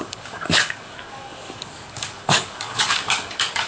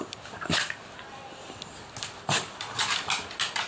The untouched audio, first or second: second